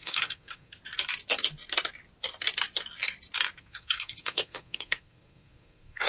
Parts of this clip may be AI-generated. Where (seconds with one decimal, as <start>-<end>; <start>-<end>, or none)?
0.0-0.8; 3.6-6.1

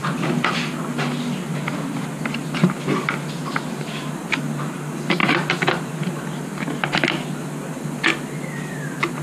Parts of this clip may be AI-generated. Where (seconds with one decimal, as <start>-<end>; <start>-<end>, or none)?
5.2-6.2

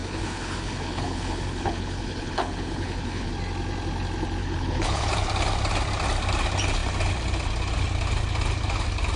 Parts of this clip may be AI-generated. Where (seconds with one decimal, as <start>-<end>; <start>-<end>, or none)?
0.0-3.3; 4.4-5.1

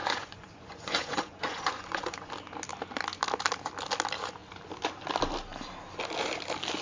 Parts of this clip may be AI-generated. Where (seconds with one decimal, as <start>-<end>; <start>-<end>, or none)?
0.0-2.3